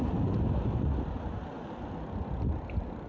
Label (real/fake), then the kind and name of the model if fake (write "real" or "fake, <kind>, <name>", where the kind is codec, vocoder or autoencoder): real